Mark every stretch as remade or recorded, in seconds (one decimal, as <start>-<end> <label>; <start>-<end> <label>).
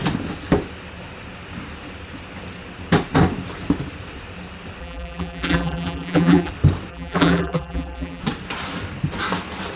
0.0-4.8 recorded; 4.8-6.5 remade; 6.5-6.9 recorded; 6.9-8.2 remade; 8.2-9.8 recorded